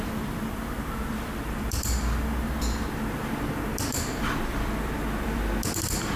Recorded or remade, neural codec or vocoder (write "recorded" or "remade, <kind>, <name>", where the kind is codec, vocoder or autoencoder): remade, vocoder, BigVGAN v2